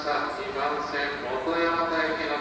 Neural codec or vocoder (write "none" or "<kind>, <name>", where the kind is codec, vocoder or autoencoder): none